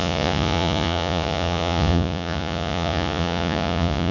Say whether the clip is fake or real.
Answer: fake